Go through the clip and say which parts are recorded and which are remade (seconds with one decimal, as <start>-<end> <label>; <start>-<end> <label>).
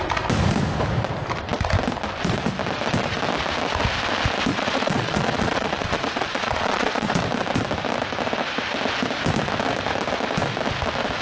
0.0-4.5 recorded; 4.5-7.1 remade; 7.1-11.2 recorded